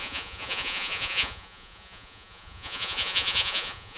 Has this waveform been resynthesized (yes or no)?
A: yes